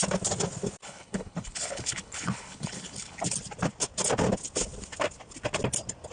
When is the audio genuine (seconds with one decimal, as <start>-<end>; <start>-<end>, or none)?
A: 0.0-0.8; 3.2-6.1